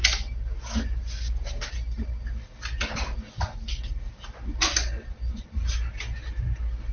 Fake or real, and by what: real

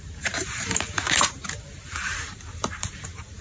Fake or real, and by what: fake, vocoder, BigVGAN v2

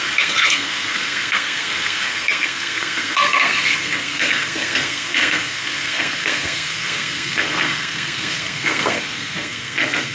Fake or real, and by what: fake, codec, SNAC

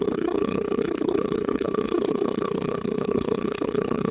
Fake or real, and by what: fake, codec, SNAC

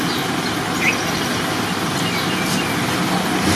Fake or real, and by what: real